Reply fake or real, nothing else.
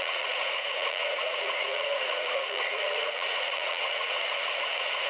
fake